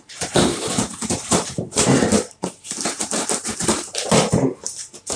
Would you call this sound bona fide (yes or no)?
no